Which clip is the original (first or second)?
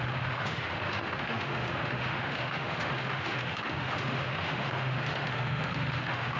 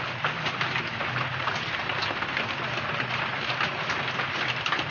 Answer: second